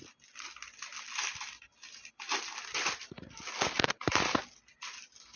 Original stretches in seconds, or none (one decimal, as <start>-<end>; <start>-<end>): 0.0-5.4